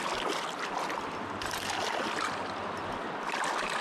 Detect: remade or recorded recorded